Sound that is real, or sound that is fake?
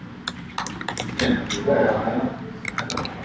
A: real